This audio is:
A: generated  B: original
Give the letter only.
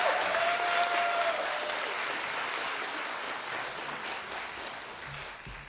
B